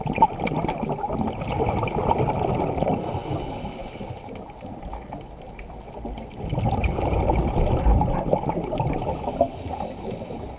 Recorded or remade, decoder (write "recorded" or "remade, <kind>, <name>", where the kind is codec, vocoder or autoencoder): recorded